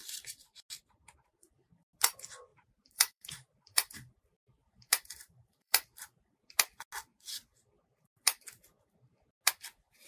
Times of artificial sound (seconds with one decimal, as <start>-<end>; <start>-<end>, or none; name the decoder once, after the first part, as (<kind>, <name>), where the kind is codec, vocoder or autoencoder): 2.5-6.4 (vocoder, BigVGAN v2)